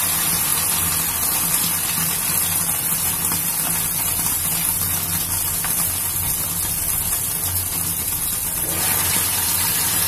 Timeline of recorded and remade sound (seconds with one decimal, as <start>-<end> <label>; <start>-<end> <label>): 0.0-10.1 recorded